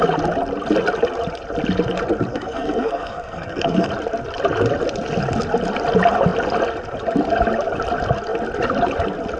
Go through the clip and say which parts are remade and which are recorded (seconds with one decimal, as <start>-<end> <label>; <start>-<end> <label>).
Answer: 0.0-2.3 recorded; 2.3-3.9 remade; 3.9-9.4 recorded